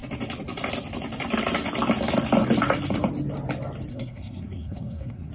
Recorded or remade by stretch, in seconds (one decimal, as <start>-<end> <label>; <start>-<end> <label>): 0.0-3.9 recorded; 3.9-5.3 remade